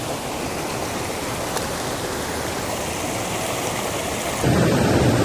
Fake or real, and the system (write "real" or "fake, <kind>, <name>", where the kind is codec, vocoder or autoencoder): real